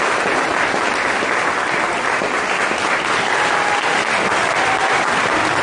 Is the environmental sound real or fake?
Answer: real